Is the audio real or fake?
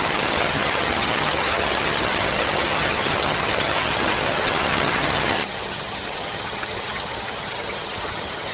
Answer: fake